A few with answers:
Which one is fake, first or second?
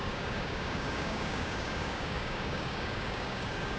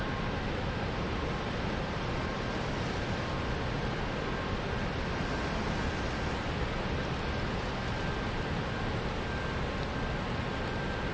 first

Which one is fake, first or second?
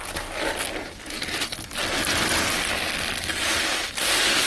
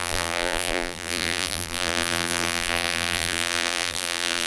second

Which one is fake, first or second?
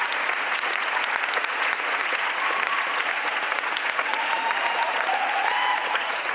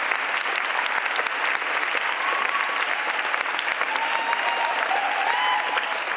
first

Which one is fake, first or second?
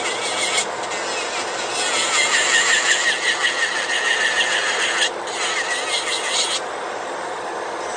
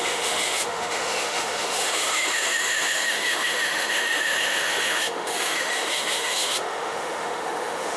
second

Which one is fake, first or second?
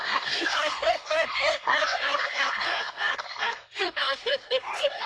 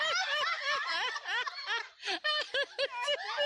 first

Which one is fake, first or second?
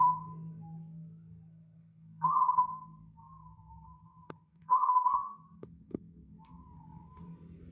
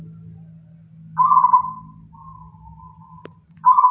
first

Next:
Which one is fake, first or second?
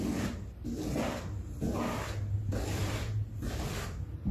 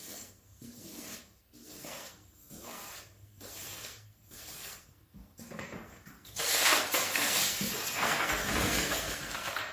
second